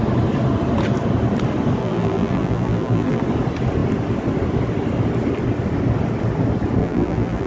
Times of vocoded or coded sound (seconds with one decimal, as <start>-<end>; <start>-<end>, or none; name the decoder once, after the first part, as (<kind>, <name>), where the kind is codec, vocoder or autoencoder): 1.8-3.2 (vocoder, BigVGAN v2); 6.8-7.5